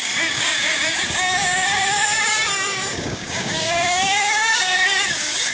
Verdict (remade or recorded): remade